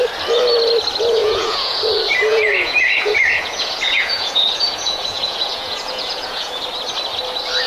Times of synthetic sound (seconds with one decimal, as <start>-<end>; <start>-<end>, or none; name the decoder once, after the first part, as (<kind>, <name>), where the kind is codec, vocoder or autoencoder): 1.2-1.8 (vocoder, Vocos); 2.3-6.6